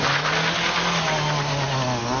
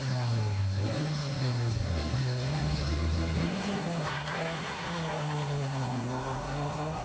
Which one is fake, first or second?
second